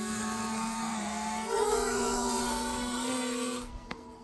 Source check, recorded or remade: remade